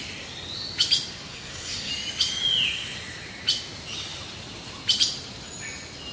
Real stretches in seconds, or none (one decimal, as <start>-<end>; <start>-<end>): 0.0-1.3; 1.9-6.1